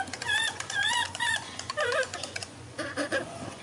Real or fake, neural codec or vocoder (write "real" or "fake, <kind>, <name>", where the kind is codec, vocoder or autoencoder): fake, vocoder, Vocos